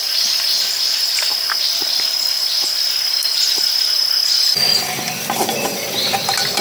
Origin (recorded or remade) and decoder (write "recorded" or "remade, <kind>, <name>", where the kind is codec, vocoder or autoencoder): recorded